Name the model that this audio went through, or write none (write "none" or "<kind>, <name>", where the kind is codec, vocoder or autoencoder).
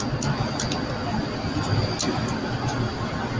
none